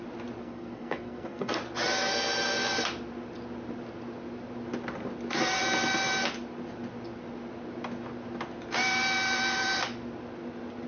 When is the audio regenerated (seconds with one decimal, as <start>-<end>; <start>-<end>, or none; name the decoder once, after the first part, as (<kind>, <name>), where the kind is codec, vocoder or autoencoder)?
0.4-1.6 (codec, SNAC)